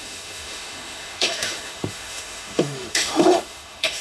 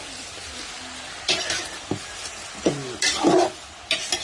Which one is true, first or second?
second